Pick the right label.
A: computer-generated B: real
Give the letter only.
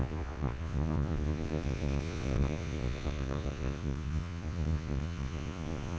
A